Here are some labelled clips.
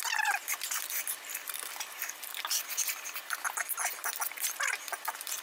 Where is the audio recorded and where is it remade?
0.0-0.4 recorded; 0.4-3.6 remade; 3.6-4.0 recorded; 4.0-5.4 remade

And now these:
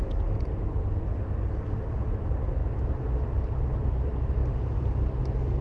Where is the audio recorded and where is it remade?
0.0-5.6 recorded

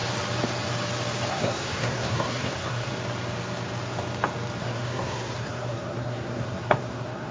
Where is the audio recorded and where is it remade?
0.0-1.3 recorded; 1.3-2.9 remade; 2.9-4.6 recorded; 4.6-7.3 remade